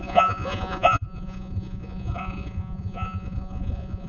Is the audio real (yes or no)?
no